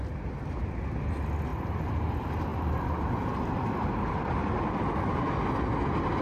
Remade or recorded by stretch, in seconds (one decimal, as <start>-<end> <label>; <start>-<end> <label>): 0.0-1.5 recorded; 1.5-2.1 remade; 2.1-2.5 recorded; 2.5-4.4 remade; 4.4-6.2 recorded